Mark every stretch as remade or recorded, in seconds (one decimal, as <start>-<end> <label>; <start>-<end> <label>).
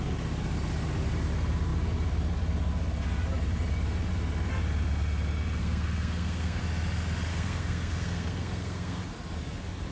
0.0-5.6 recorded; 5.6-6.6 remade; 6.6-7.3 recorded; 7.3-9.0 remade; 9.0-9.9 recorded